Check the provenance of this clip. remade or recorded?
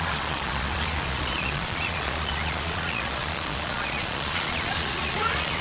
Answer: remade